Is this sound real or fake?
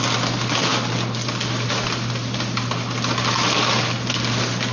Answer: real